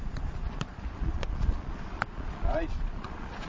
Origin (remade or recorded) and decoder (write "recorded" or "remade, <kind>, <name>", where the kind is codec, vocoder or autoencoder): remade, vocoder, Vocos